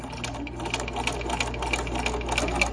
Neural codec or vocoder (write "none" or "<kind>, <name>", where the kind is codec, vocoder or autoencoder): none